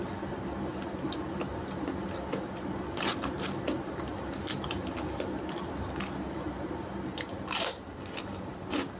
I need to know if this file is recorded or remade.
recorded